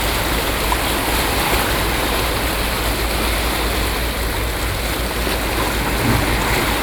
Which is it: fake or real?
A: real